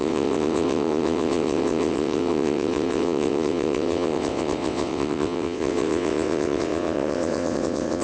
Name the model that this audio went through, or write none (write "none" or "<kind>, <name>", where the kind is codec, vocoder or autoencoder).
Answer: vocoder, WaveNeXt